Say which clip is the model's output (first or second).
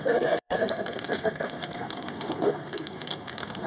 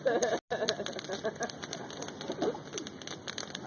first